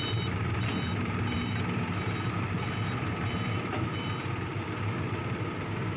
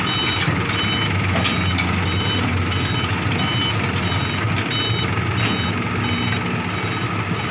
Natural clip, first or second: second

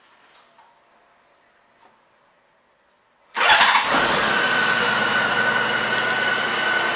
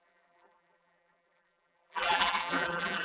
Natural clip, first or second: first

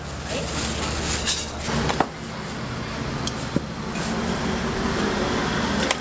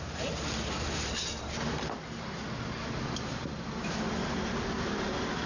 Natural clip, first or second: first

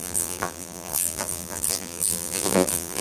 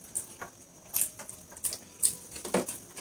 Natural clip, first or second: second